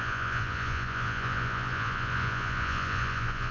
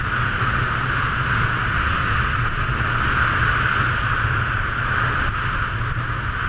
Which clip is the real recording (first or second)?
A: second